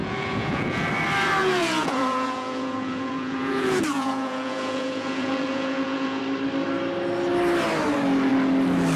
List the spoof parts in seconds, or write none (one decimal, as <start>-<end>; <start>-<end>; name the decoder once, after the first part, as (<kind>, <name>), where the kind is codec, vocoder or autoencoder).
0.0-0.9 (vocoder, Vocos); 1.4-6.2